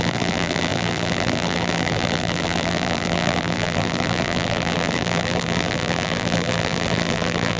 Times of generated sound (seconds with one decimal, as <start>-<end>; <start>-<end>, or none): 0.0-7.6